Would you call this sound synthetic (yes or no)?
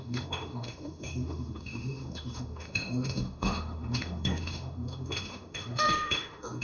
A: yes